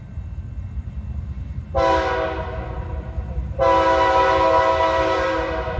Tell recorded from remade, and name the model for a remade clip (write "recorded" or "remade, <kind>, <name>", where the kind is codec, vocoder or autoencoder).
recorded